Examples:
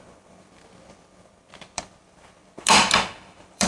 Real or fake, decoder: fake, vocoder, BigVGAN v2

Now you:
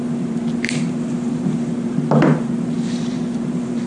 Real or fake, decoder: fake, vocoder, BigVGAN v2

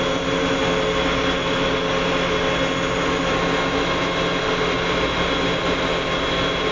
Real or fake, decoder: real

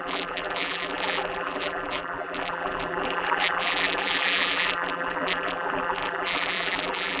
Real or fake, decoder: fake, vocoder, BigVGAN v2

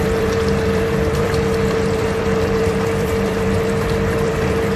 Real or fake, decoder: fake, vocoder, BigVGAN v2